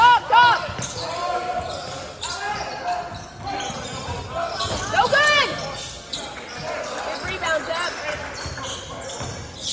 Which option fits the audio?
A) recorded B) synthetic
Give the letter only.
A